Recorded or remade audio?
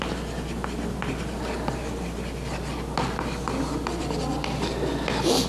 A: recorded